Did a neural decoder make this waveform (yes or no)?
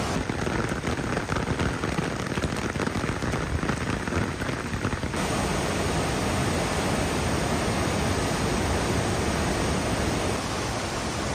no